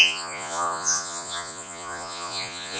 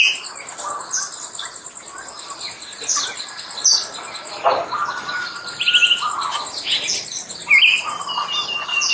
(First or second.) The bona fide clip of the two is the second